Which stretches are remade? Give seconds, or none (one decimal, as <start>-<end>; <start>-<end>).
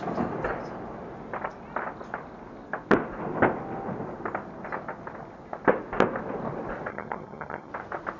6.9-7.7